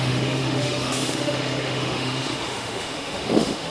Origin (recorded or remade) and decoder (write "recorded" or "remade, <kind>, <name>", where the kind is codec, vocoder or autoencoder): remade, autoencoder, DAC-VAE